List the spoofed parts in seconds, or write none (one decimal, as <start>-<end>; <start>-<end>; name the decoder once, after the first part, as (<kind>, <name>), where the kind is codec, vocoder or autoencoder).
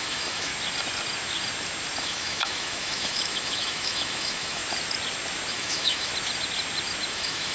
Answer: 0.0-0.5 (autoencoder, DAC-VAE); 2.0-4.6; 5.5-6.1; 7.1-7.5